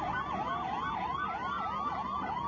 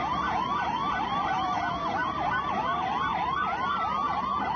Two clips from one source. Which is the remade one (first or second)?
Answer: second